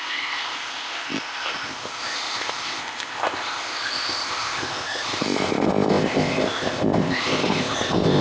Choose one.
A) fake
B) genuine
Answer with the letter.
A